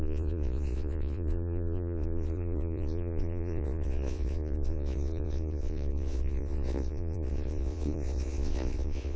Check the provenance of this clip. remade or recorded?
remade